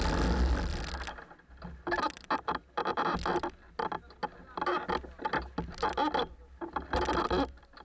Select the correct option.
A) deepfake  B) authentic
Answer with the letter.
B